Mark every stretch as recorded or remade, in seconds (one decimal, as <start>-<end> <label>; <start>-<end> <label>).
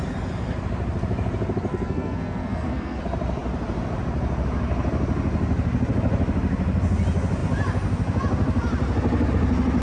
0.0-1.7 recorded; 1.7-3.0 remade; 3.0-9.8 recorded